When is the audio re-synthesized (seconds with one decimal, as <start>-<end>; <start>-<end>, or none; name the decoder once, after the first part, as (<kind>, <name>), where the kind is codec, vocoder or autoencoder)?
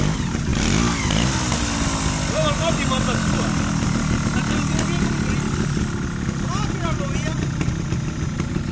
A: none